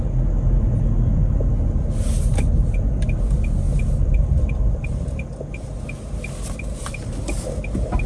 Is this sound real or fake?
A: real